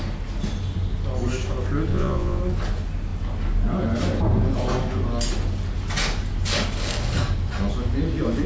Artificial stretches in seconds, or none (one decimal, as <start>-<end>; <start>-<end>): 1.9-2.4